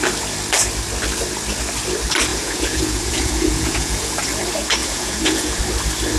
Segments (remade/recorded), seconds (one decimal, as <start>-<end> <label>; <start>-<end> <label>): 0.0-2.3 recorded; 2.3-4.2 remade; 4.2-4.8 recorded; 4.8-5.6 remade; 5.6-6.2 recorded